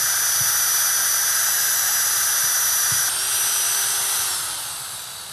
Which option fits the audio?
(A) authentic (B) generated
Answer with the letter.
A